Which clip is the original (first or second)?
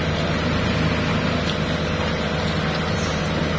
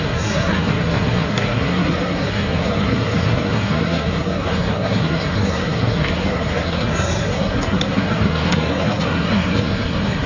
first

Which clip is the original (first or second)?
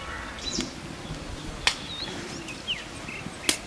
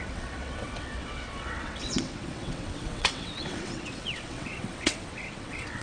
first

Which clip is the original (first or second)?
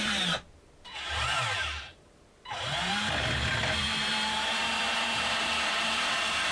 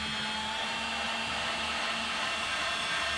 second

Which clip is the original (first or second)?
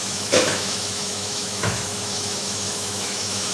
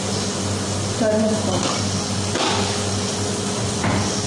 second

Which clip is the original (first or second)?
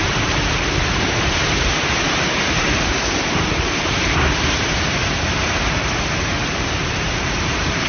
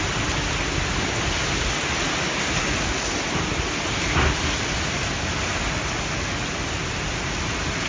second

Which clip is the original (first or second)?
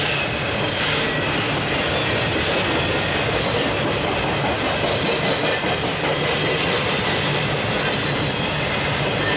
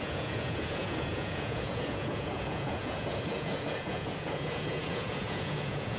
first